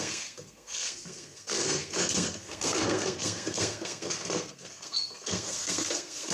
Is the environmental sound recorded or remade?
remade